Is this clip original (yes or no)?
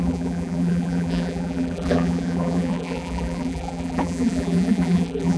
no